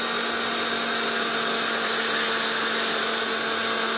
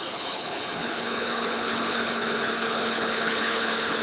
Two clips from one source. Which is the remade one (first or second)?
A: second